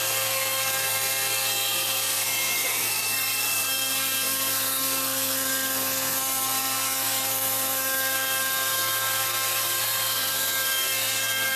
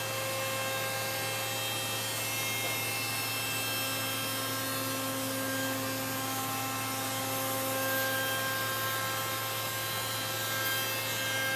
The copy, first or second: first